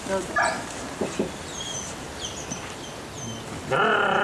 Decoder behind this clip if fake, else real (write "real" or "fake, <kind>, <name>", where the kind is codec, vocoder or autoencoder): real